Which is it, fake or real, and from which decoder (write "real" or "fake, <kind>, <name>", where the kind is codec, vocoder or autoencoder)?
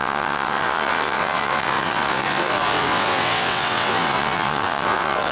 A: fake, vocoder, WaveNeXt